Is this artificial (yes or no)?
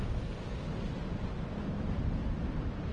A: no